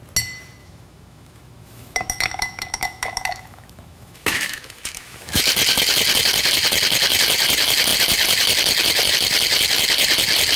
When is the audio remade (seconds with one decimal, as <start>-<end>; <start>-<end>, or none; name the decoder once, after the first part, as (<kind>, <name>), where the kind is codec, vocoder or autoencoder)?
0.6-5.4 (autoencoder, DAC-VAE)